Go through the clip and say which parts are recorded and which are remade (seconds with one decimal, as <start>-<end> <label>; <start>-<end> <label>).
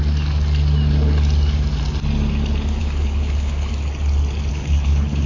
0.0-2.8 recorded; 2.8-3.7 remade; 3.7-4.5 recorded; 4.5-5.3 remade